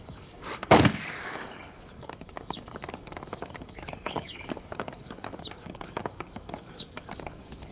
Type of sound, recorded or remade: remade